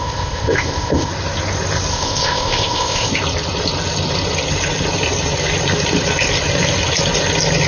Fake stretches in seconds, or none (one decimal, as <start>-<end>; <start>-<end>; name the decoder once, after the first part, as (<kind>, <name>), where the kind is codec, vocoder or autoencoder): 0.0-1.1 (codec, ZipCodec); 1.9-3.1